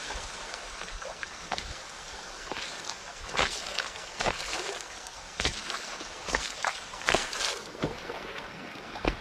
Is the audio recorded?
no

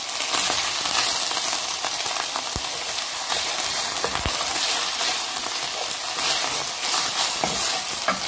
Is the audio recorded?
yes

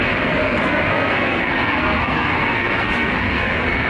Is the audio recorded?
no